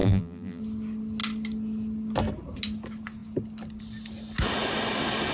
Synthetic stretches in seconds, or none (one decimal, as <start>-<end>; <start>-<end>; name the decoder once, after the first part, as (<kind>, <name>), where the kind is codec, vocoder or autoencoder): 0.0-0.6 (vocoder, BigVGAN v2)